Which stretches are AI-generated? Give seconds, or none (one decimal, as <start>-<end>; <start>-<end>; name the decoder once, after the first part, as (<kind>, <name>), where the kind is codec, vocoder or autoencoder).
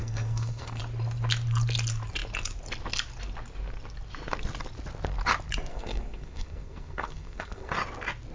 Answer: 0.0-0.8 (codec, SNAC); 5.7-7.7